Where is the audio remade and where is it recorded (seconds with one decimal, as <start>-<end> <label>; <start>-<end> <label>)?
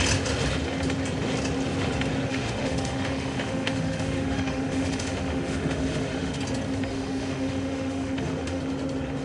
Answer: 0.0-2.3 recorded; 2.3-6.4 remade; 6.4-6.9 recorded; 6.9-8.6 remade; 8.6-9.2 recorded